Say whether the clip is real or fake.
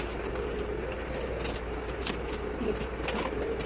real